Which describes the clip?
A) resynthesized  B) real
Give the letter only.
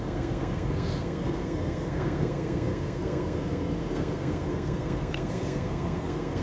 A